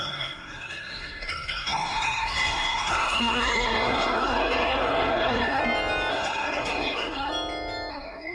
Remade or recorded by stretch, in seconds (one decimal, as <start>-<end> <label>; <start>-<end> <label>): 0.0-5.6 remade; 5.6-6.1 recorded; 6.1-7.3 remade; 7.3-7.9 recorded; 7.9-8.3 remade